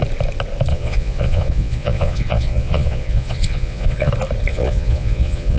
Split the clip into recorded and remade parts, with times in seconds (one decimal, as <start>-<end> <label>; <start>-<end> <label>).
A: 0.0-0.7 recorded; 0.7-4.1 remade; 4.1-4.5 recorded; 4.5-5.6 remade